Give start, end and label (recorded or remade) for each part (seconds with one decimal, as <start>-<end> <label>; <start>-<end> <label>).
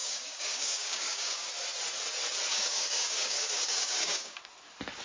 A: 0.0-1.5 remade; 1.5-2.5 recorded; 2.5-4.4 remade; 4.4-5.0 recorded